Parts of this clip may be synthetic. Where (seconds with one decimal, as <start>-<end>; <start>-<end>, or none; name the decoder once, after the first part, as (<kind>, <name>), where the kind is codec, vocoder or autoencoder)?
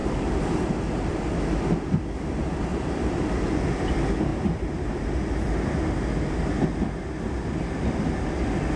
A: 0.0-1.1 (vocoder, BigVGAN v2); 2.7-3.3; 4.3-5.1